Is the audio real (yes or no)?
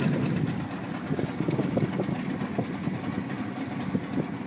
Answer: yes